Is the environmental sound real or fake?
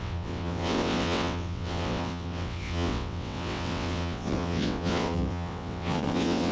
fake